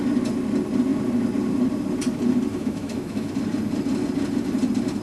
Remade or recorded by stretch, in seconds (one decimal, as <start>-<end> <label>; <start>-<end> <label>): 0.0-2.5 recorded; 2.5-3.3 remade; 3.3-5.0 recorded

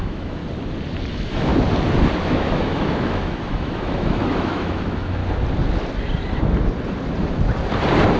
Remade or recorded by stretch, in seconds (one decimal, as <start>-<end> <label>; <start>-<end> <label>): 0.0-0.4 remade; 0.4-1.1 recorded; 1.1-1.5 remade; 1.5-2.2 recorded; 2.2-5.2 remade; 5.2-8.2 recorded

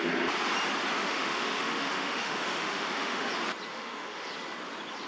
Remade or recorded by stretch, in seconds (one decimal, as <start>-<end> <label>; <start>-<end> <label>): 0.0-1.0 recorded; 1.0-3.3 remade; 3.3-3.7 recorded; 3.7-4.3 remade; 4.3-5.1 recorded

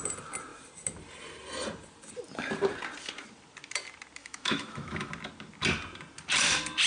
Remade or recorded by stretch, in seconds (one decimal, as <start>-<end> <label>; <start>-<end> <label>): 0.0-4.2 recorded; 4.2-5.1 remade; 5.1-6.9 recorded

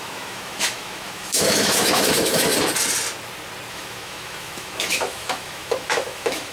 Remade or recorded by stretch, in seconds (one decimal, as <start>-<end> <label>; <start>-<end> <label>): 0.0-2.5 remade; 2.5-3.7 recorded; 3.7-6.5 remade

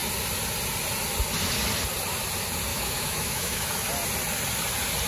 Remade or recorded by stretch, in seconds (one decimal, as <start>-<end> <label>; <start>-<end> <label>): 0.0-2.7 recorded; 2.7-3.7 remade; 3.7-5.1 recorded

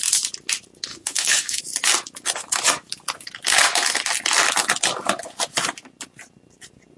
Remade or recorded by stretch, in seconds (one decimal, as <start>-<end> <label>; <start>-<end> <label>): 0.0-0.9 recorded; 0.9-1.6 remade; 1.6-7.0 recorded

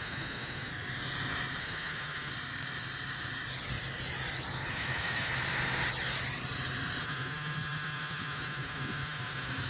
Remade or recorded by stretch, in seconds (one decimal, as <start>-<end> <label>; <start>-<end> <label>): 0.0-0.7 remade; 0.7-1.6 recorded; 1.6-2.3 remade; 2.3-4.7 recorded; 4.7-5.3 remade; 5.3-7.0 recorded; 7.0-9.7 remade